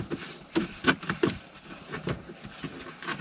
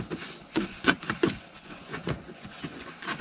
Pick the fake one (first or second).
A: second